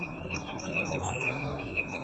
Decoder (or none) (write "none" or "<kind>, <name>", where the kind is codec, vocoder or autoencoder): codec, SNAC